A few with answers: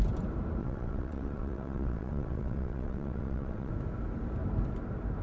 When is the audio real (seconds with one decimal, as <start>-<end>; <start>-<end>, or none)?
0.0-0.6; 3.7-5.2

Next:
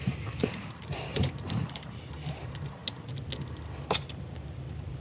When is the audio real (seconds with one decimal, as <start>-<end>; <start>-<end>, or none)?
2.8-3.9

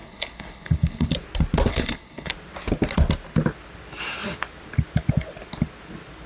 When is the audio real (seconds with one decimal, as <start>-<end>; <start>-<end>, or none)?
1.1-1.7; 2.3-6.3